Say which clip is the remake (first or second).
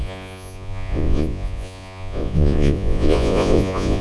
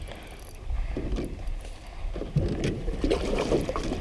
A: first